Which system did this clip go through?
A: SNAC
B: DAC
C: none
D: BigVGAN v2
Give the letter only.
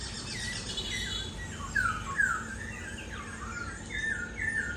C